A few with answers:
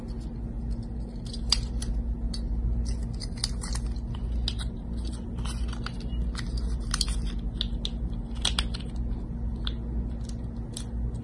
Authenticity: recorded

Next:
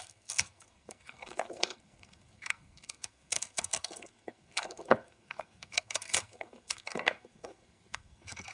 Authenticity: remade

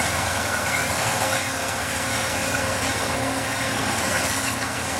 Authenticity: remade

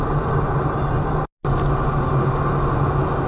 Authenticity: recorded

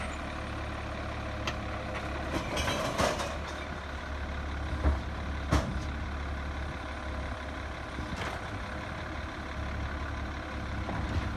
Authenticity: recorded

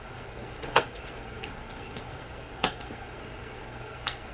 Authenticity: remade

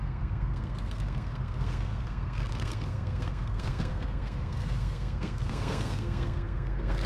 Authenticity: remade